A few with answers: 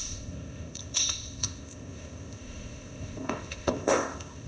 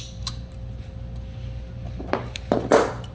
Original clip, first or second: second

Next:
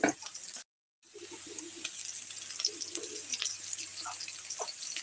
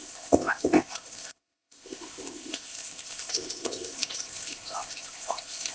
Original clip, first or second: first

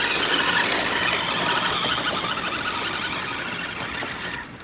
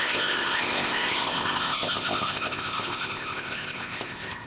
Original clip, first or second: first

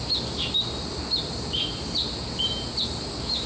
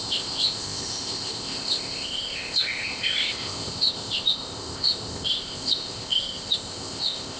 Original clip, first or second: first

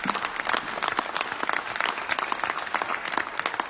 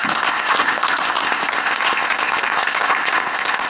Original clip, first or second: first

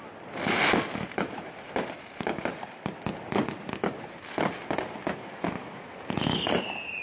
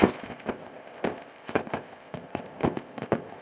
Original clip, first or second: first